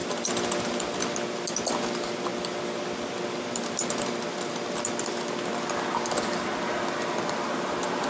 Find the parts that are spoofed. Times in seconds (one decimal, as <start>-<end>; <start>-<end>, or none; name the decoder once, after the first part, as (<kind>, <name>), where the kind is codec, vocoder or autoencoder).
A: none